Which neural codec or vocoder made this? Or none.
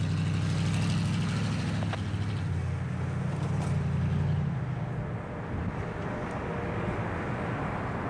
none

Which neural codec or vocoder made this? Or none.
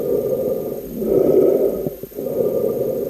none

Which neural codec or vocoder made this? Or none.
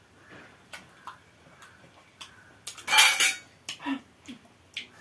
none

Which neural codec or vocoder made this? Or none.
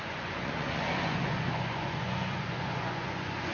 vocoder, Vocos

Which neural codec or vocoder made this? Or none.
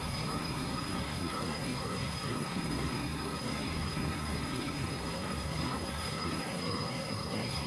codec, SNAC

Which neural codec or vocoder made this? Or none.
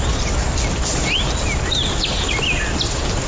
none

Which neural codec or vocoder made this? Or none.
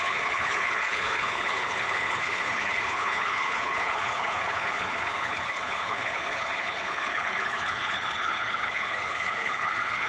codec, HILCodec